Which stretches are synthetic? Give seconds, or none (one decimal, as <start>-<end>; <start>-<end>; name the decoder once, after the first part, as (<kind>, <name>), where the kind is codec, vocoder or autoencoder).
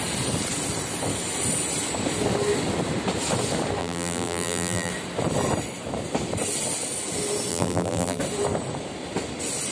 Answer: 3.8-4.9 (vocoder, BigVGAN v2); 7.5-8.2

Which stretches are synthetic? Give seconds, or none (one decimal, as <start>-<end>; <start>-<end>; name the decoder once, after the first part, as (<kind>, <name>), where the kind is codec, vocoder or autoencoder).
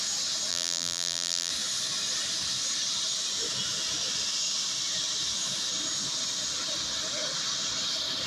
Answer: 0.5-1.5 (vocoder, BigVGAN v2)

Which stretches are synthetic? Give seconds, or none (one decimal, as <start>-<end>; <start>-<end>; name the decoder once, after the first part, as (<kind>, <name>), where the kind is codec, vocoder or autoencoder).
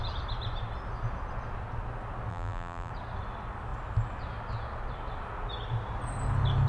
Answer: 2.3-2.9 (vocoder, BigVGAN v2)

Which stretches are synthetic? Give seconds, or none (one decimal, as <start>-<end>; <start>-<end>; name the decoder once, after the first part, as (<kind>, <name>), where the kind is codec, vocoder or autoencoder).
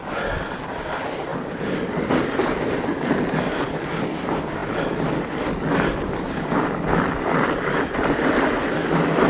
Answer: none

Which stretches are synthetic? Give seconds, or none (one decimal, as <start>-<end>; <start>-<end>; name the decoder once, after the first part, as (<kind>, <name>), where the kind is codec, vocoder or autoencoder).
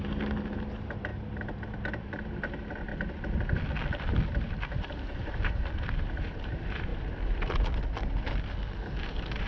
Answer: 0.0-1.1 (vocoder, BigVGAN v2); 1.9-2.9; 4.5-6.9; 9.0-9.5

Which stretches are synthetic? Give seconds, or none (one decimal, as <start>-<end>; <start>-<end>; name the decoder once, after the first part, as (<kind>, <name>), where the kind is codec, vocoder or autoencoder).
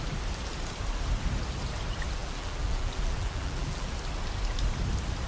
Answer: 2.2-3.9 (vocoder, BigVGAN v2)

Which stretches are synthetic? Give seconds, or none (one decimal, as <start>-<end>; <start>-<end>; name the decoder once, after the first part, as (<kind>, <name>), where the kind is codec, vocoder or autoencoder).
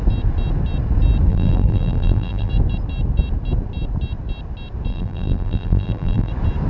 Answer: 1.3-2.5 (vocoder, BigVGAN v2); 4.9-6.3